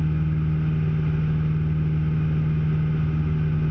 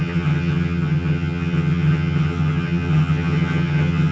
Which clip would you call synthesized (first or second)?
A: second